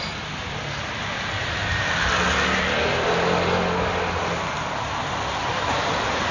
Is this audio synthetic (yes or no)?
no